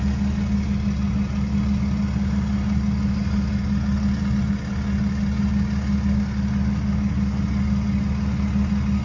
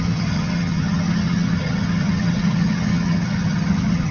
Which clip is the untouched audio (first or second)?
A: first